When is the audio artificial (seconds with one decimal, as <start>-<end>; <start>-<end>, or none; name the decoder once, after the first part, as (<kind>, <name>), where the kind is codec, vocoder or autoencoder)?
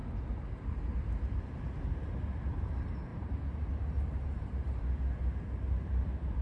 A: 3.1-4.8 (vocoder, BigVGAN v2)